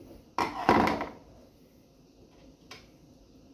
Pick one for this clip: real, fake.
real